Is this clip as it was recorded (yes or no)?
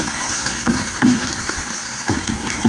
no